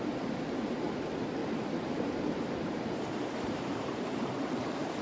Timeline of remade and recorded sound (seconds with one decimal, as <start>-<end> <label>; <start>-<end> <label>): 0.0-1.4 recorded; 1.4-4.4 remade; 4.4-5.0 recorded

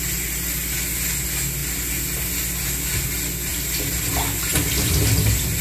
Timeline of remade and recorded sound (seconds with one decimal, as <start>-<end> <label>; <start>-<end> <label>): 0.0-4.5 recorded; 4.5-5.6 remade

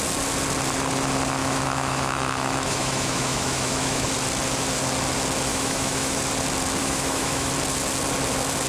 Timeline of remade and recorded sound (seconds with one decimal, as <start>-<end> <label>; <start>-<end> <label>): 0.0-1.4 recorded; 1.4-4.1 remade; 4.1-5.5 recorded; 5.5-6.2 remade; 6.2-6.8 recorded; 6.8-7.5 remade; 7.5-8.7 recorded

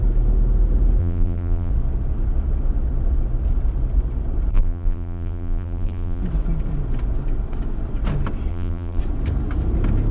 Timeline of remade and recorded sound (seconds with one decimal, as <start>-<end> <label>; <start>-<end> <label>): 0.0-1.0 recorded; 1.0-1.7 remade; 1.7-4.5 recorded; 4.5-6.2 remade; 6.2-8.5 recorded; 8.5-9.0 remade; 9.0-10.1 recorded

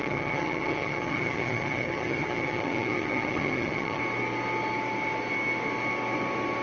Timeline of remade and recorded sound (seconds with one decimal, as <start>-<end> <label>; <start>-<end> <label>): 0.0-4.0 remade; 4.0-6.6 recorded

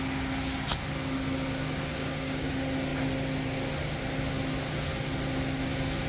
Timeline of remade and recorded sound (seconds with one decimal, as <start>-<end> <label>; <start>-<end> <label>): 0.0-1.9 recorded; 1.9-2.5 remade; 2.5-6.1 recorded

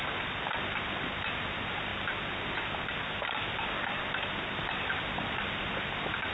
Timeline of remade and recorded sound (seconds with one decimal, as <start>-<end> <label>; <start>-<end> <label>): 0.0-6.3 recorded

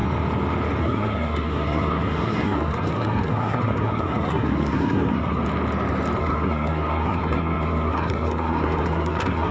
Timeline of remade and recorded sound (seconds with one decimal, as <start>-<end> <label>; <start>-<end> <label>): 0.0-0.8 recorded; 0.8-5.4 remade; 5.4-6.2 recorded; 6.2-9.5 remade